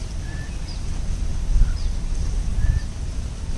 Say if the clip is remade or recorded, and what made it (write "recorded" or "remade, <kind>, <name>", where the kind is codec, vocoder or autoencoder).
recorded